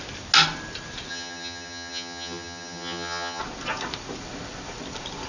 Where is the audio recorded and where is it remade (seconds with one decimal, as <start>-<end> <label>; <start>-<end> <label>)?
0.0-1.1 recorded; 1.1-3.4 remade; 3.4-5.3 recorded